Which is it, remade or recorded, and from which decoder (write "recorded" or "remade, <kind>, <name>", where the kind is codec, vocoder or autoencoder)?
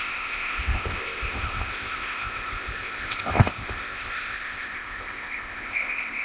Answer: remade, codec, ZipCodec